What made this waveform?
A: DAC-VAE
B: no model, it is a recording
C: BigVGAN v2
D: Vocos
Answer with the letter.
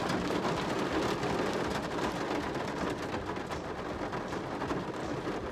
B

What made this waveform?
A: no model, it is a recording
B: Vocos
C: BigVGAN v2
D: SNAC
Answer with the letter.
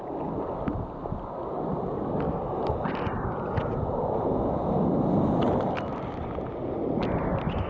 A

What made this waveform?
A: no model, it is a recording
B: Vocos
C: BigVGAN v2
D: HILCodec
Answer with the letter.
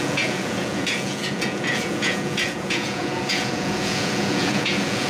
B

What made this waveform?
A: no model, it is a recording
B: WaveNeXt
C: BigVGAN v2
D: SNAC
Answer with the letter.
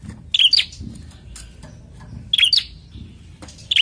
A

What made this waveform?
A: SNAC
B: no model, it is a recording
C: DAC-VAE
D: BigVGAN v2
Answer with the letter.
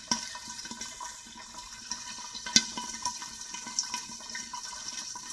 B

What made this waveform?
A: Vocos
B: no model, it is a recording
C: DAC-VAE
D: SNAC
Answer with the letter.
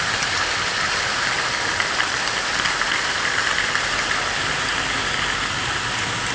B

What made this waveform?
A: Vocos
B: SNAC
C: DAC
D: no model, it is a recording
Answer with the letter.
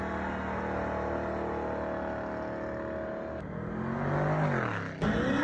D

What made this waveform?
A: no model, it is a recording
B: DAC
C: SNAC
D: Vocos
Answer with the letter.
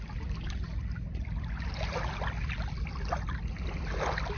A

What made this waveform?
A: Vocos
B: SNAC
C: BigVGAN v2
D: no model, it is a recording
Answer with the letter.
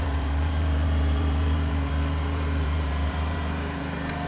C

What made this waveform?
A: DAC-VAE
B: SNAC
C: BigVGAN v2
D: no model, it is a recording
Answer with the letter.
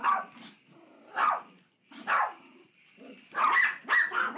D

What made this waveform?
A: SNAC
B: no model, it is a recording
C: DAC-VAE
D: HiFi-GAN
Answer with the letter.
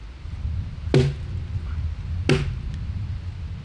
B